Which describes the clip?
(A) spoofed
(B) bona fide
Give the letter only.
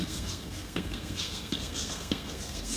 A